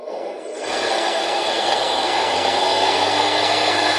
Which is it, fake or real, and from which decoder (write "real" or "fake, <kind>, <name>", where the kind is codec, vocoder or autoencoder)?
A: fake, codec, SNAC